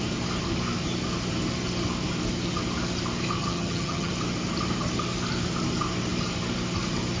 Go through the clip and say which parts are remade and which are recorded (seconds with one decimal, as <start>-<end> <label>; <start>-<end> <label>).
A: 0.0-3.4 recorded; 3.4-4.1 remade; 4.1-7.2 recorded